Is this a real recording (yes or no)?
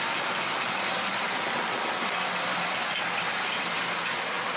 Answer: yes